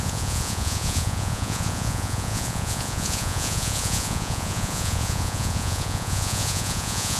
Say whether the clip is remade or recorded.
remade